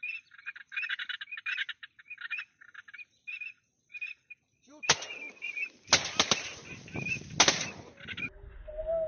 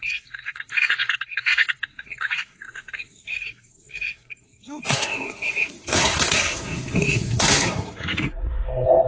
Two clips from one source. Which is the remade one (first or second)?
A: second